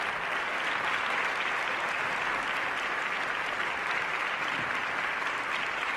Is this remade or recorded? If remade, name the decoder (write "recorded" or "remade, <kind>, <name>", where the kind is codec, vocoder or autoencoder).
recorded